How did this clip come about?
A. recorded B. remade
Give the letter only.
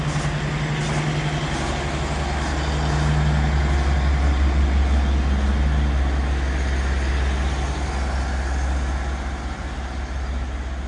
A